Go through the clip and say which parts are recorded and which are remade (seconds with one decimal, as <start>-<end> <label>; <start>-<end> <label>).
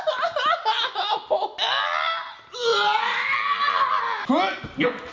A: 0.0-2.7 recorded; 2.7-4.0 remade; 4.0-5.1 recorded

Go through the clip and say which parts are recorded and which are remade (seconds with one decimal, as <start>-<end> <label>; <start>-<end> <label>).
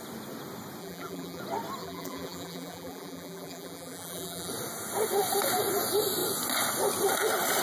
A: 0.0-0.8 recorded; 0.8-1.4 remade; 1.4-1.8 recorded; 1.8-4.5 remade; 4.5-7.6 recorded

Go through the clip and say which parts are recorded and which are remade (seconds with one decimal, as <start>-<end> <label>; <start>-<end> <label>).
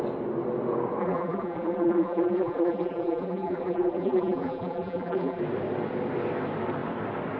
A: 0.0-1.0 recorded; 1.0-5.4 remade; 5.4-7.4 recorded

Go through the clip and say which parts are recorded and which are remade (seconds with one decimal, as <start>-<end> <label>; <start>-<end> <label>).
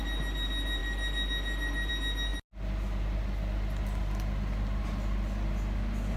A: 0.0-6.2 recorded